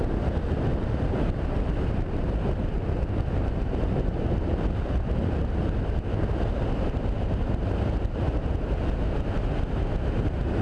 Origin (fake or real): real